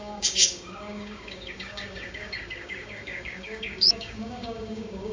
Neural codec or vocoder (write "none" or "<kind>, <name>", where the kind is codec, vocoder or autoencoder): codec, DAC